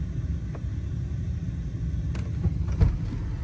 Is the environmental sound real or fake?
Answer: real